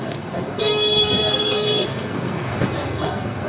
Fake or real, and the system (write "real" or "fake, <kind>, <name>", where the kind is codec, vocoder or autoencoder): fake, codec, SNAC